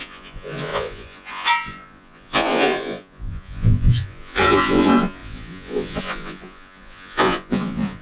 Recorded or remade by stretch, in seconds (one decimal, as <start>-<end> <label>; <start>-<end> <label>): 0.0-8.0 remade